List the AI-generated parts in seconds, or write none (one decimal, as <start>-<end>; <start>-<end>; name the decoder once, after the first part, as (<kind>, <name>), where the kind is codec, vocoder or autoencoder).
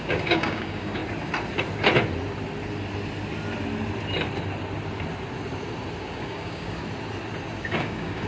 0.0-1.0 (codec, DAC); 6.0-6.8; 7.6-8.3